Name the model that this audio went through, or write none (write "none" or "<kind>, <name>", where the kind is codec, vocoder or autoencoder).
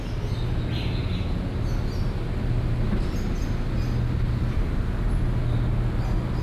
none